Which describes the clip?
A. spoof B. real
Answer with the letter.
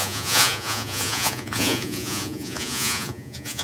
A